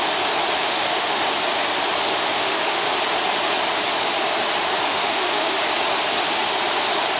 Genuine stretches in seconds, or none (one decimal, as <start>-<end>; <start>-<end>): 0.0-0.6; 1.2-2.2; 2.9-4.9; 5.6-7.2